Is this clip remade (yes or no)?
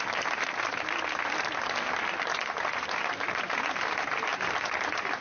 no